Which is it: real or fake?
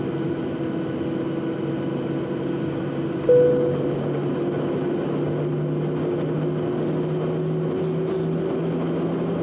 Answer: real